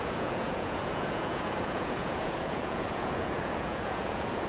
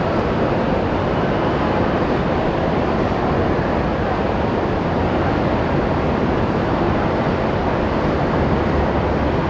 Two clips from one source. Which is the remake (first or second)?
first